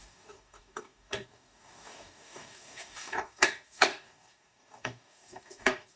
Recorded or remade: remade